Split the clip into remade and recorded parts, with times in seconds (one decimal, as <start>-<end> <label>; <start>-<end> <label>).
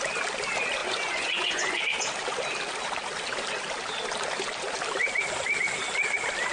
0.0-0.8 recorded; 0.8-1.8 remade; 1.8-6.5 recorded